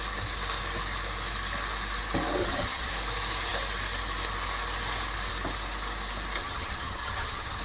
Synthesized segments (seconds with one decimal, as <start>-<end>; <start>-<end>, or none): 2.4-2.9; 6.4-7.6